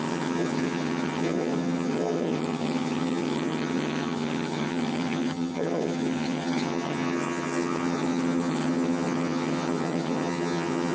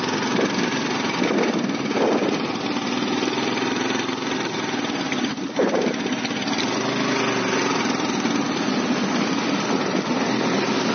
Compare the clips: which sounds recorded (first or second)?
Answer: second